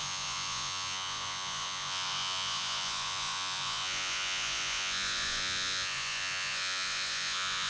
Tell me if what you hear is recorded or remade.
remade